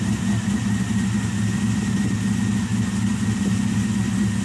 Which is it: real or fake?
real